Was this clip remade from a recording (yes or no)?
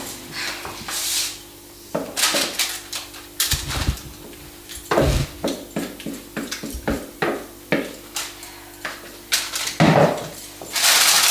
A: no